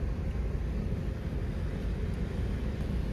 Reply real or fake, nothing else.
real